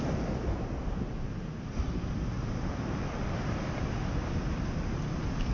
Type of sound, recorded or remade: recorded